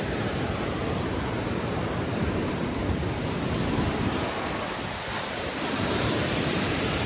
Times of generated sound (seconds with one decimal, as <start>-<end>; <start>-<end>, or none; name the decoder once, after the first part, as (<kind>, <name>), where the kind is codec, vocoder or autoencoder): 0.0-2.8 (vocoder, BigVGAN v2); 5.2-7.1